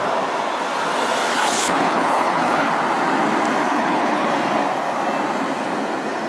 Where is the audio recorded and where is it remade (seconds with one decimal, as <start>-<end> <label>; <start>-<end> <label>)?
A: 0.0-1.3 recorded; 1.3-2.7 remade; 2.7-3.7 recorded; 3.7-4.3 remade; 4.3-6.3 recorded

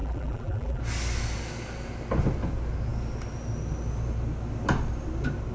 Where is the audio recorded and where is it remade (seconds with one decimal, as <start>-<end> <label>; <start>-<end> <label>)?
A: 0.0-0.8 remade; 0.8-5.5 recorded

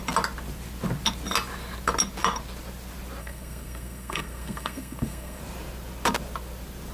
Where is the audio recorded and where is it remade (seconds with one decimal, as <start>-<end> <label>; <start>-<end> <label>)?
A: 0.0-3.2 recorded; 3.2-5.4 remade; 5.4-6.9 recorded

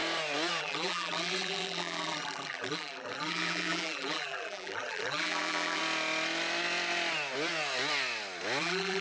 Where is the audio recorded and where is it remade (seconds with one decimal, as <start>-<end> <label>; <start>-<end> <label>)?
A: 0.0-0.6 recorded; 0.6-5.8 remade; 5.8-8.6 recorded; 8.6-9.0 remade

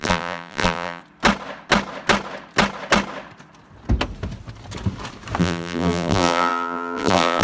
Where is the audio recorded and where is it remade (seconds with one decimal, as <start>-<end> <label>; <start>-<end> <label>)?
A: 0.0-1.0 remade; 1.0-5.4 recorded; 5.4-7.4 remade

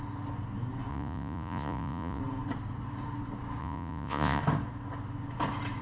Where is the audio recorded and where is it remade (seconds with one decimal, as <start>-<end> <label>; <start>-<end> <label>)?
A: 0.0-0.9 recorded; 0.9-2.2 remade; 2.2-3.6 recorded; 3.6-4.4 remade; 4.4-5.8 recorded